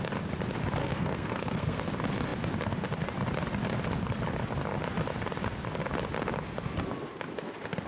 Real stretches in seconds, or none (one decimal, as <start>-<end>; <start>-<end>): 0.0-0.8; 1.9-7.9

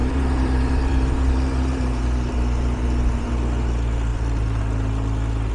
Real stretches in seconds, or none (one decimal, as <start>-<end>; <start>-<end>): 3.3-4.1; 4.6-5.5

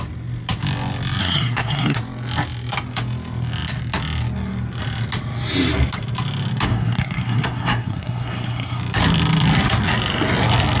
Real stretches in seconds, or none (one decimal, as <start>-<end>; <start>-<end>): 0.0-1.2; 2.0-6.7; 8.8-10.8

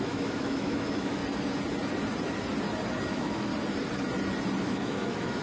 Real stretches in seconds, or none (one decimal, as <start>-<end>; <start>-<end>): 1.2-3.1; 3.5-4.6

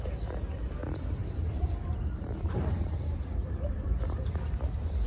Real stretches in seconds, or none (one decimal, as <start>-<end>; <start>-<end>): 0.0-1.2; 4.3-5.1

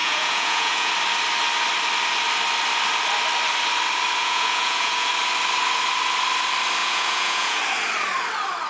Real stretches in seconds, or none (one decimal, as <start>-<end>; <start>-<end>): 0.9-4.2; 5.1-6.8; 7.6-8.7

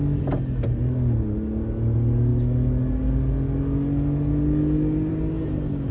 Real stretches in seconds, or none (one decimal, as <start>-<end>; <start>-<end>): 0.0-5.9

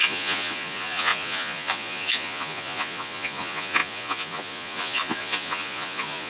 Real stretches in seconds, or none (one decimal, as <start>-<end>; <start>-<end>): none